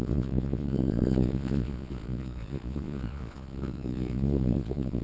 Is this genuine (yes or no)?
no